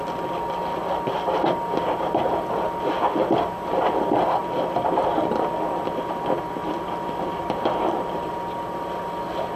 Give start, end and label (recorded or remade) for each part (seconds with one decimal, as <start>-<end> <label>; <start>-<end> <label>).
0.0-4.4 recorded; 4.4-8.6 remade; 8.6-9.6 recorded